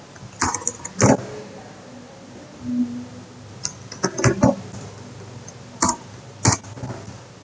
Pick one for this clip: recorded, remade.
recorded